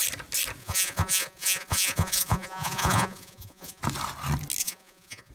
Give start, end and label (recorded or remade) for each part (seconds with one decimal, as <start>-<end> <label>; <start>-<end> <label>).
0.0-0.6 recorded; 0.6-3.8 remade; 3.8-4.6 recorded; 4.6-5.3 remade